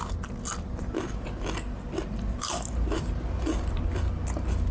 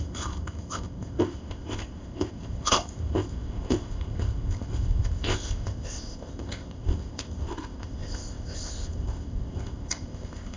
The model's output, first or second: second